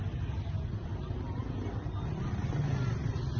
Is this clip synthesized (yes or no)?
no